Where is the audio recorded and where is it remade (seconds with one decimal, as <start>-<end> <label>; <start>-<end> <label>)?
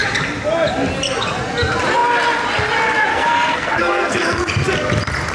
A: 0.0-3.1 recorded; 3.1-4.5 remade; 4.5-5.3 recorded